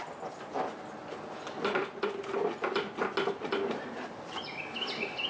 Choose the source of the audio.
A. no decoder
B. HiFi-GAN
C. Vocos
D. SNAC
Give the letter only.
A